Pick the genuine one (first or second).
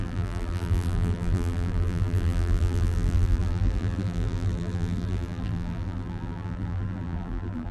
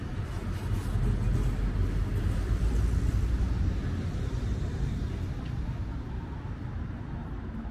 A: second